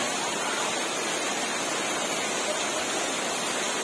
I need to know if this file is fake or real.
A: real